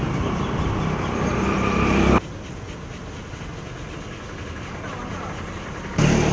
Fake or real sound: real